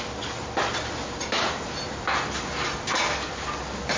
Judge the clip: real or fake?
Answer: real